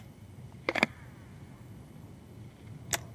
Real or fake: real